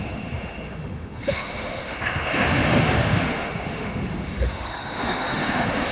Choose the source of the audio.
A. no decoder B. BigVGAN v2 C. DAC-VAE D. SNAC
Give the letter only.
C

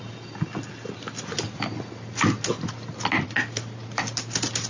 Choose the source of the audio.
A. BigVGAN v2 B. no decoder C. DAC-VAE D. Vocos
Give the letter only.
B